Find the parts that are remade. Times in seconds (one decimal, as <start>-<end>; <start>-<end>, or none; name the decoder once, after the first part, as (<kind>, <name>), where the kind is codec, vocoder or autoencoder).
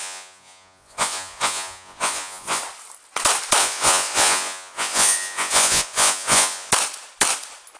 0.0-2.6 (vocoder, Vocos); 3.6-6.7